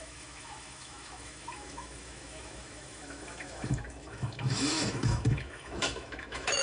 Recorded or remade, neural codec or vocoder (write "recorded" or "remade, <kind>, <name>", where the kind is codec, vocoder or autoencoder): remade, autoencoder, DAC-VAE